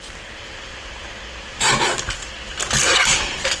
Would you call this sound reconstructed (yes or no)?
yes